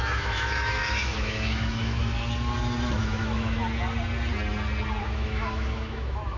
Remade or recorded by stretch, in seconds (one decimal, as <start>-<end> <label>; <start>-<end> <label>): 0.0-2.0 remade; 2.0-3.0 recorded; 3.0-3.6 remade; 3.6-5.0 recorded; 5.0-6.4 remade